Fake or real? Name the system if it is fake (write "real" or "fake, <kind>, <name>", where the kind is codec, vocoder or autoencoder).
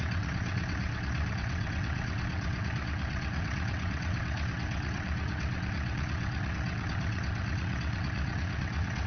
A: fake, vocoder, WaveNeXt